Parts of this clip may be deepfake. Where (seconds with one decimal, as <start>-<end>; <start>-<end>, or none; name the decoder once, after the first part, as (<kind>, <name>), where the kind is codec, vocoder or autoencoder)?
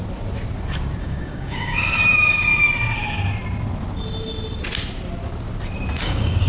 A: 1.0-2.5 (codec, DAC); 6.0-6.5